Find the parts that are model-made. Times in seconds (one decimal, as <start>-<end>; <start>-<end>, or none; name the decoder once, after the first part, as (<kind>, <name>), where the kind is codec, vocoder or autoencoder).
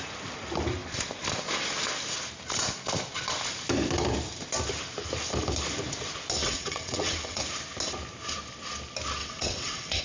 6.4-7.4 (vocoder, WaveNeXt); 9.2-10.0